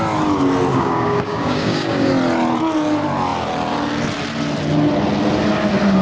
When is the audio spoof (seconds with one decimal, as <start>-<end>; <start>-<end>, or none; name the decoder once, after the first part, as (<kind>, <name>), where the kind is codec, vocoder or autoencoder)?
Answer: 0.7-2.1 (codec, DAC)